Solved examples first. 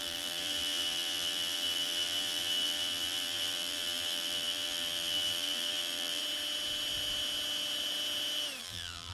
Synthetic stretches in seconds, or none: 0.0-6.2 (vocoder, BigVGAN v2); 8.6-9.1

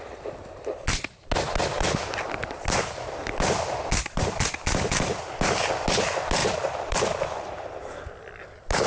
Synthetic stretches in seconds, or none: 6.4-8.4 (vocoder, BigVGAN v2)

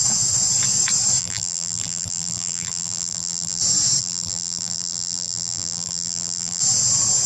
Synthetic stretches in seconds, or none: 1.2-3.6 (vocoder, BigVGAN v2); 4.0-6.6

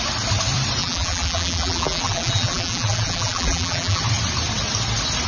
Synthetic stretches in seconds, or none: 0.8-4.0 (vocoder, BigVGAN v2)

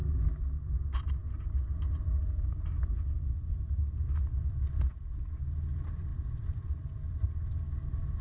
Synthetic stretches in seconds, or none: 0.7-1.2 (vocoder, BigVGAN v2); 5.1-8.2